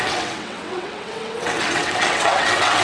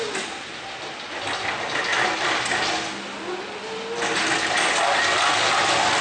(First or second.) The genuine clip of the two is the second